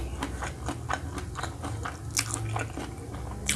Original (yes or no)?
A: yes